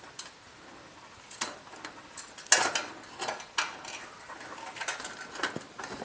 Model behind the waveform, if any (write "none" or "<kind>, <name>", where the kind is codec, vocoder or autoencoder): none